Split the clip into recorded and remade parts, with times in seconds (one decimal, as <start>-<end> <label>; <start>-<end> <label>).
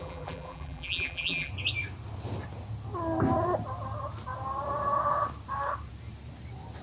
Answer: 0.0-1.5 remade; 1.5-6.8 recorded